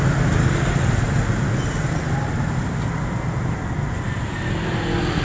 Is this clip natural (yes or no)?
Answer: yes